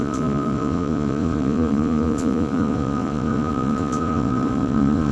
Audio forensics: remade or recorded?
remade